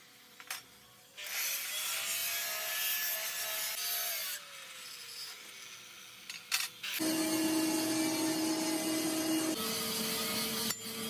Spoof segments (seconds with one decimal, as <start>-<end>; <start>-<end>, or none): none